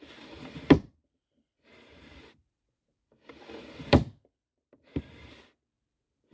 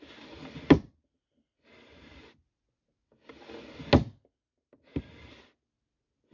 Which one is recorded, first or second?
second